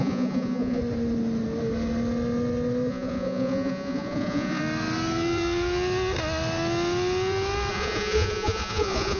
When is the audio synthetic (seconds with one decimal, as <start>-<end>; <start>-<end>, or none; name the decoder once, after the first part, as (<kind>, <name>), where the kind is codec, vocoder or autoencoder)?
0.0-0.8 (vocoder, Vocos); 2.9-4.6; 7.7-9.2

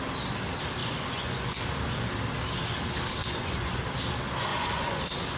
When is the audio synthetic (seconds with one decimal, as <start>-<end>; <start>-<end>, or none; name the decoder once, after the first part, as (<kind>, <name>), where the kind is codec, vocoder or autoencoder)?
0.8-1.6 (vocoder, Vocos); 3.2-3.8; 4.5-5.0

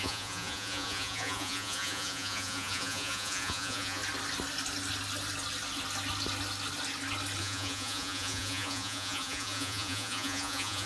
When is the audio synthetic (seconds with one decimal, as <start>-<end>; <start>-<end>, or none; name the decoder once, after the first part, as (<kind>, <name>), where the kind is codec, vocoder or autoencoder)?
0.0-4.0 (vocoder, Vocos); 7.4-10.9

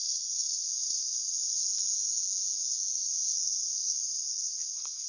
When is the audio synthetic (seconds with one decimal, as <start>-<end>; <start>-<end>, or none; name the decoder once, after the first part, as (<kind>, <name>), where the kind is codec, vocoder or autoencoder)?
0.0-5.1 (codec, SNAC)

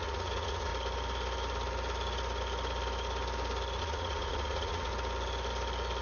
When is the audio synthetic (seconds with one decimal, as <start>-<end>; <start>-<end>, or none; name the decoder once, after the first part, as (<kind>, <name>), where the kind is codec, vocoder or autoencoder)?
0.0-0.7 (vocoder, Vocos); 3.8-4.9

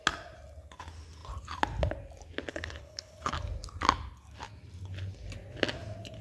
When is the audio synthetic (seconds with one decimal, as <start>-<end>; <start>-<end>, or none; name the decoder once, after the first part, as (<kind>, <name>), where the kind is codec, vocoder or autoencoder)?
2.5-3.3 (codec, HILCodec)

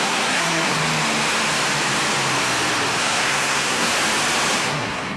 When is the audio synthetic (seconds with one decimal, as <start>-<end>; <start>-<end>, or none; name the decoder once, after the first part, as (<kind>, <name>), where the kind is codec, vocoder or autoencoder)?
0.0-0.8 (codec, SNAC); 3.0-3.9; 4.5-5.2

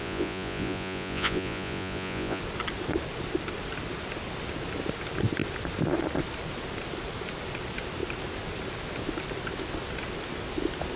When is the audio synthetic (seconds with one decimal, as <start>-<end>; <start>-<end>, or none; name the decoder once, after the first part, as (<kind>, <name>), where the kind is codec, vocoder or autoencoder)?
0.0-2.4 (vocoder, Vocos)